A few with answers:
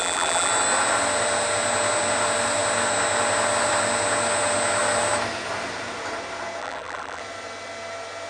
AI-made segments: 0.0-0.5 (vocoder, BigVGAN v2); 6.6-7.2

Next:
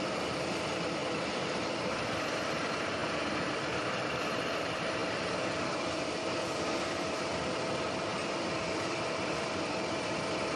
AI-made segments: 0.0-1.0 (vocoder, BigVGAN v2); 1.8-5.0; 6.9-10.6

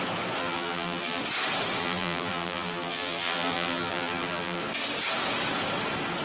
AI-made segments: 0.4-1.2 (vocoder, BigVGAN v2); 1.8-4.6

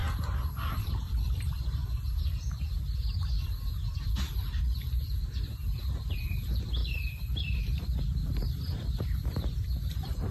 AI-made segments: 0.8-6.8 (vocoder, BigVGAN v2); 7.4-10.3